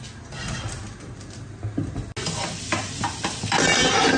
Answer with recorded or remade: recorded